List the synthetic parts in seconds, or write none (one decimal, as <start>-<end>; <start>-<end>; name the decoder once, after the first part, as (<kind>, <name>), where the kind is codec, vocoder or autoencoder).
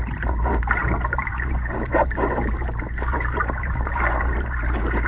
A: 0.0-5.1 (vocoder, BigVGAN v2)